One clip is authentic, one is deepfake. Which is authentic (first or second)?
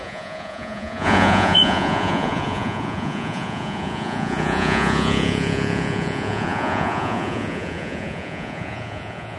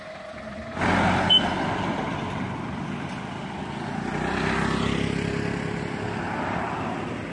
second